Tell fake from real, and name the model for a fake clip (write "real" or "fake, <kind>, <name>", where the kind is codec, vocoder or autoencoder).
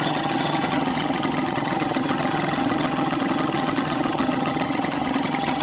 fake, vocoder, HiFi-GAN